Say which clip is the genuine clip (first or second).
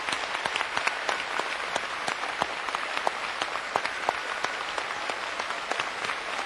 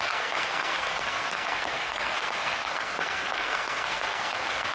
first